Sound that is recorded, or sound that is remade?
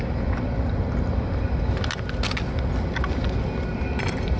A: recorded